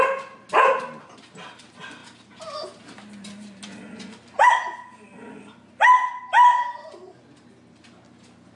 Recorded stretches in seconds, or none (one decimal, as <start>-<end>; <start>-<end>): 0.0-8.6